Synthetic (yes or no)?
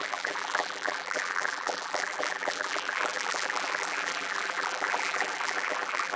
yes